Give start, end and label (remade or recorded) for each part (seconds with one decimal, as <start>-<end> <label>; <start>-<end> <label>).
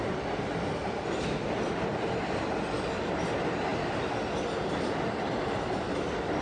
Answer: 0.0-6.4 recorded